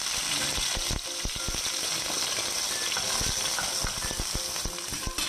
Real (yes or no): yes